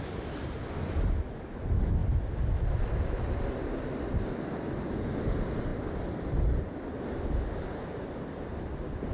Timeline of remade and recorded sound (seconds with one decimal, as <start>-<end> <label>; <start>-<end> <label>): 0.0-2.0 recorded; 2.0-2.9 remade; 2.9-9.1 recorded